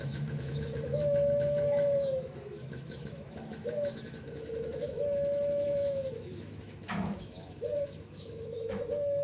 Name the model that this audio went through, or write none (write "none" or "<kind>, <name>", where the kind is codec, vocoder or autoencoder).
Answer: autoencoder, DAC-VAE